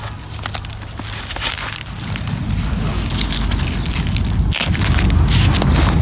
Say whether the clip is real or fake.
real